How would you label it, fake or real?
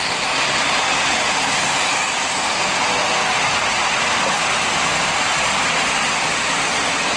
real